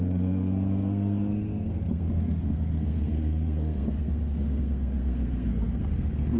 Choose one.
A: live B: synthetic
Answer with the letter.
B